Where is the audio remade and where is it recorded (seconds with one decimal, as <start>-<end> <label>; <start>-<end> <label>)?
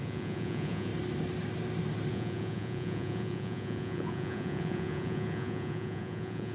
0.0-0.9 remade; 0.9-2.1 recorded; 2.1-6.5 remade